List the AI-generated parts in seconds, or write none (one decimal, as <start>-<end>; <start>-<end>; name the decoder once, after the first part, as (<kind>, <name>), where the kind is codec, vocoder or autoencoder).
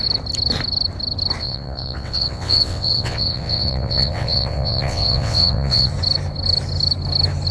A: 1.4-5.9 (vocoder, WaveNeXt)